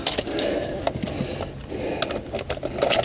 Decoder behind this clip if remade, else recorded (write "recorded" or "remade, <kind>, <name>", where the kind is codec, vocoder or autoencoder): recorded